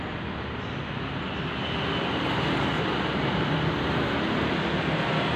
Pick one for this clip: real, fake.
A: real